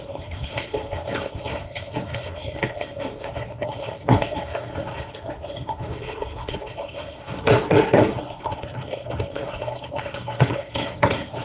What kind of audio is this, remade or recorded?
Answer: remade